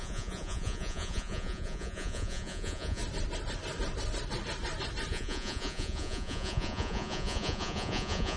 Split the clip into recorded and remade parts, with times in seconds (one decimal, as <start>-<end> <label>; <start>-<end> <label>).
0.0-3.0 remade; 3.0-5.1 recorded; 5.1-8.4 remade